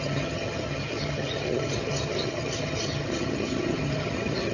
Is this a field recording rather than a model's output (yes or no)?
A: no